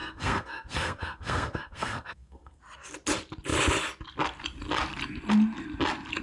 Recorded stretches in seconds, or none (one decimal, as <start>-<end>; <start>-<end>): 2.6-6.2